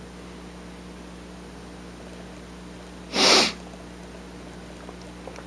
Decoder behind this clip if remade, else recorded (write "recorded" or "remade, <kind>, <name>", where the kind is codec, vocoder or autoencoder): recorded